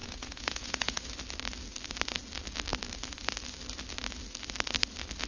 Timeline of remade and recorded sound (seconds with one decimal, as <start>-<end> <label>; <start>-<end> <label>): 0.0-1.1 remade; 1.1-5.3 recorded